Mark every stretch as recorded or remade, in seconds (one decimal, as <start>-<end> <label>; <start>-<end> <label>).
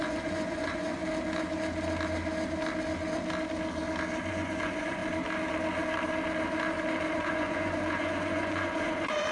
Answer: 0.0-1.0 remade; 1.0-4.3 recorded; 4.3-5.0 remade; 5.0-7.2 recorded; 7.2-9.3 remade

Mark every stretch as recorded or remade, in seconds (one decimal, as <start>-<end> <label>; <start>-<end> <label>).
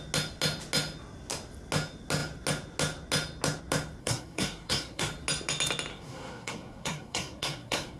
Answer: 0.0-4.0 recorded; 4.0-5.1 remade; 5.1-5.9 recorded; 5.9-8.0 remade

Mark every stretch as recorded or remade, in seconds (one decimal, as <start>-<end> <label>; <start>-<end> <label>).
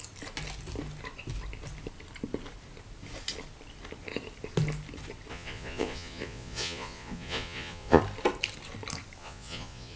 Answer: 0.0-5.3 recorded; 5.3-8.0 remade; 8.0-9.2 recorded; 9.2-10.0 remade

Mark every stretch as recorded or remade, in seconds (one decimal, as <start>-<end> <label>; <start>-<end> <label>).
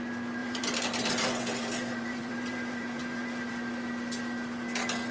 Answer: 0.0-0.4 recorded; 0.4-3.5 remade; 3.5-5.1 recorded